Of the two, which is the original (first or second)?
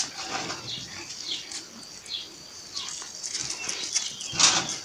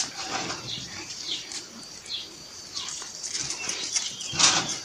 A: first